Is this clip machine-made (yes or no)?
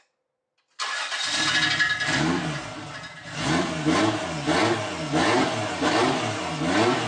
no